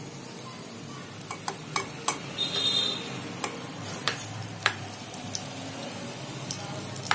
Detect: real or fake real